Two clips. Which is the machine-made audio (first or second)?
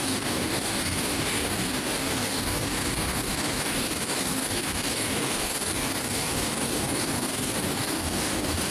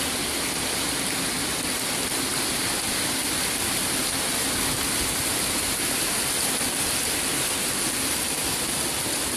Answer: first